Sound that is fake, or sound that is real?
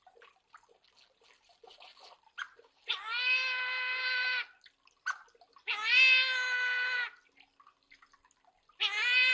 real